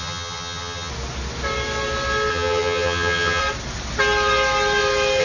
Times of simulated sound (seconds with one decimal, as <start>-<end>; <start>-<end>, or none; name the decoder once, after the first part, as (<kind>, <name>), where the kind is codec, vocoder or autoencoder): 0.0-0.9 (vocoder, HiFi-GAN); 2.3-3.4